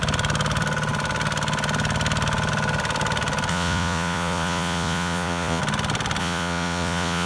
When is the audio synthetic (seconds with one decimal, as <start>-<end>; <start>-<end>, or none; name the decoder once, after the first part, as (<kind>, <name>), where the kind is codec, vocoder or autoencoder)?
3.5-5.6 (vocoder, Vocos); 6.2-7.3